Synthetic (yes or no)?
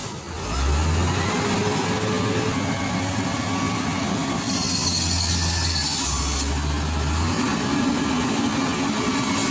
no